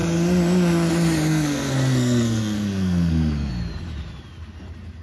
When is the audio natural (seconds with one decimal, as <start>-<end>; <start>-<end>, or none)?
0.0-1.3; 3.5-5.0

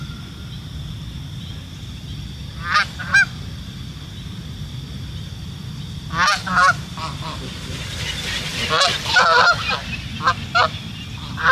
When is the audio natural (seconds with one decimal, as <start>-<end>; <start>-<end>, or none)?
0.0-11.5

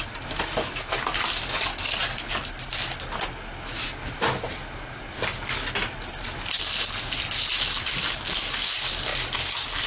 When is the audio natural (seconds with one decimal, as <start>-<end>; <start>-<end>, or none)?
0.0-9.9

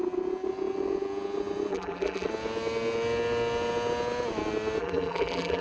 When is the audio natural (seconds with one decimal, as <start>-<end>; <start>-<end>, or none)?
0.0-1.7; 2.3-4.8

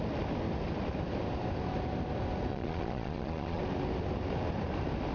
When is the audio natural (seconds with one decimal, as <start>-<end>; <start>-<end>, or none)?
0.0-2.5; 3.6-5.1

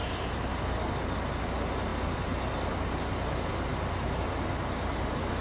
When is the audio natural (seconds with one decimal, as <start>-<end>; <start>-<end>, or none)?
0.0-5.4

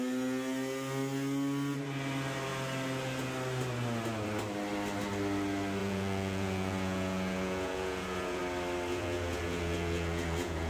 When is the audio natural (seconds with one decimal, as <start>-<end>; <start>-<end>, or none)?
0.0-5.8; 8.4-8.9

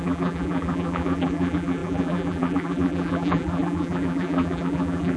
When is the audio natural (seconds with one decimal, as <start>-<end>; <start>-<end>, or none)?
none